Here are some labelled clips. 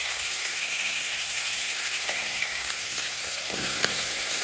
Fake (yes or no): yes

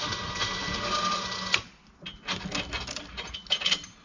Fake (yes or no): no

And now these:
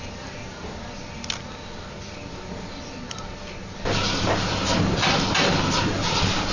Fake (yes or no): no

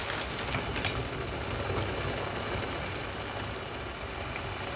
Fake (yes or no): no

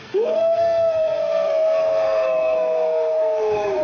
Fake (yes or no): yes